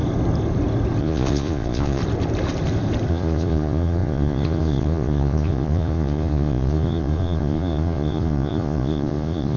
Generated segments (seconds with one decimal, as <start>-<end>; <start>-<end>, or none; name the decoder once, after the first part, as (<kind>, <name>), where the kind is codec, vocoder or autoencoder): 1.0-2.0 (vocoder, Vocos); 3.1-9.6